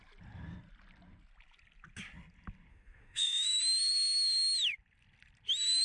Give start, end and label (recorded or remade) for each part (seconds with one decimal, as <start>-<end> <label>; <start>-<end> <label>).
0.0-2.7 recorded; 2.7-3.6 remade; 3.6-5.8 recorded